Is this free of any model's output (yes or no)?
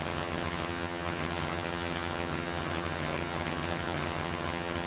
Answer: no